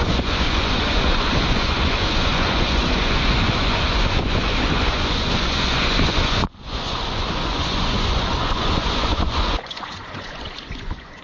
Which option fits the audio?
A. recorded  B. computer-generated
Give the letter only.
B